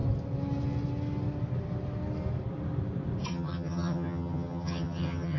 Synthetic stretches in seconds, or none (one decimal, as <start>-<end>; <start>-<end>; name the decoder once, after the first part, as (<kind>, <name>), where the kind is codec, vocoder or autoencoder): 3.3-5.4 (vocoder, HiFi-GAN)